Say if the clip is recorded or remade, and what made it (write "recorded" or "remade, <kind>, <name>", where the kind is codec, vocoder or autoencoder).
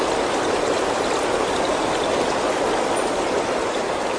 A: recorded